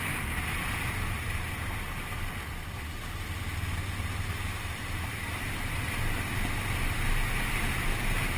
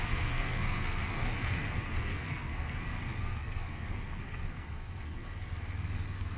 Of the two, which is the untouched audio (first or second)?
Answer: first